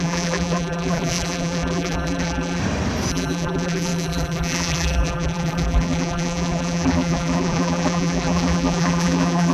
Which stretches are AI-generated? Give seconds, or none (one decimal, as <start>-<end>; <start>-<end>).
0.0-2.6; 3.1-9.5